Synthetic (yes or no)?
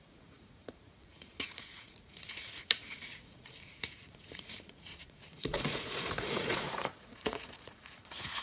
yes